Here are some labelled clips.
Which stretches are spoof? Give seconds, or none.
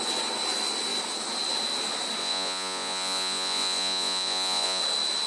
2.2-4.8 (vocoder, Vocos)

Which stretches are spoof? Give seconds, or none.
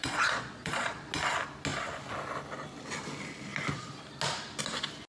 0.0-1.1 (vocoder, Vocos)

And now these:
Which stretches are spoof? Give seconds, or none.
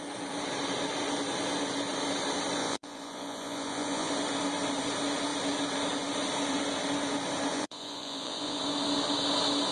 2.6-4.1 (vocoder, Vocos); 7.5-8.6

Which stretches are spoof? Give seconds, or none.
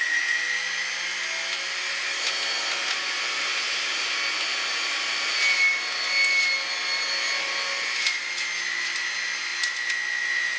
none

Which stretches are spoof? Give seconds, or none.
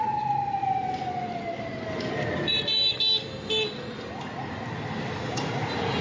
none